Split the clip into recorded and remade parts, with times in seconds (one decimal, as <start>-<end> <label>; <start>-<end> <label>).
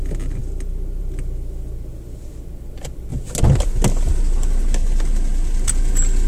0.0-6.3 recorded